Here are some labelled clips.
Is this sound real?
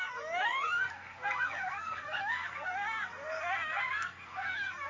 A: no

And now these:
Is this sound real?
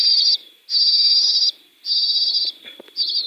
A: yes